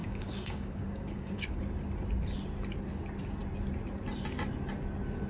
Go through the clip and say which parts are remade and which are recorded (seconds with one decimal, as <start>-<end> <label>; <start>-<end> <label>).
0.0-1.6 remade; 1.6-5.3 recorded